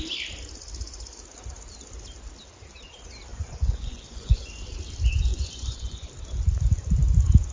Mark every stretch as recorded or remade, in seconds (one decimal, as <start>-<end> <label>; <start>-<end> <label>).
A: 0.0-3.3 recorded; 3.3-4.5 remade; 4.5-5.3 recorded; 5.3-6.1 remade; 6.1-7.5 recorded